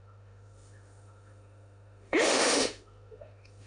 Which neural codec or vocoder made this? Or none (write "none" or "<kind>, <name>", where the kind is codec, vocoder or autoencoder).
autoencoder, DAC-VAE